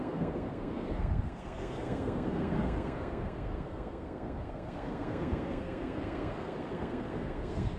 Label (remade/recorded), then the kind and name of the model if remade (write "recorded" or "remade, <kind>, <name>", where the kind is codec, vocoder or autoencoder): remade, codec, SNAC